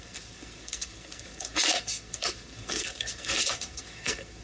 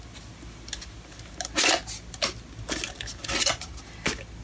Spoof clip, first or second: first